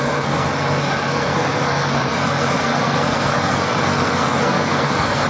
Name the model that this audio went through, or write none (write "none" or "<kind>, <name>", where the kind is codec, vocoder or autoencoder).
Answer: codec, SNAC